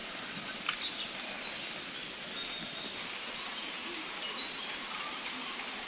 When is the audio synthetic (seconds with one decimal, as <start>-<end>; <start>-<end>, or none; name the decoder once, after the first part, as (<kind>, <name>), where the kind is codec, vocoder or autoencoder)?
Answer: 3.5-5.9 (vocoder, BigVGAN v2)